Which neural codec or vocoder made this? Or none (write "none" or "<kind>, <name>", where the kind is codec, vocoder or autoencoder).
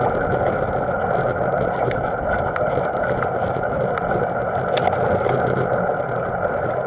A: none